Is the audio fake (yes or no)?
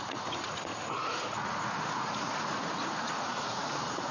yes